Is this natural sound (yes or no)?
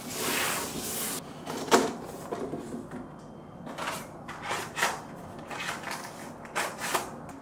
yes